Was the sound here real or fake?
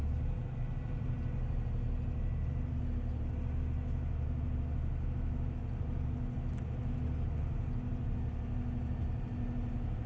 real